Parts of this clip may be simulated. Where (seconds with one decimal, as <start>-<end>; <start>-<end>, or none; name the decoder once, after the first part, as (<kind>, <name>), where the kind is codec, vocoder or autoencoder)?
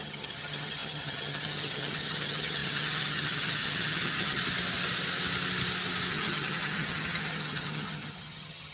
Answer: 0.0-4.4 (vocoder, HiFi-GAN); 6.1-8.7